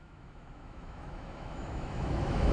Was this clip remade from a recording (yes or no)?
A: yes